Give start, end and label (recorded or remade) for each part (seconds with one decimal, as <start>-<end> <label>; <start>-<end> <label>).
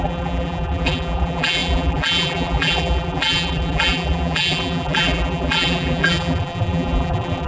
0.0-7.5 remade